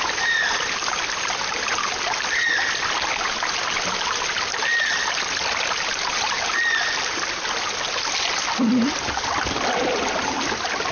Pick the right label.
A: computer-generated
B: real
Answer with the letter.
B